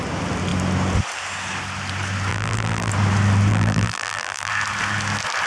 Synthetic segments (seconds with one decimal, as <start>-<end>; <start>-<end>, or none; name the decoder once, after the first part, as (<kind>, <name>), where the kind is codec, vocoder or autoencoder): 2.3-2.9 (vocoder, BigVGAN v2); 3.5-4.5